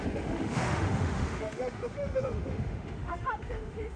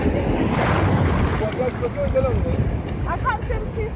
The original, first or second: second